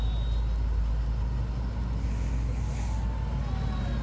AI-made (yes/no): no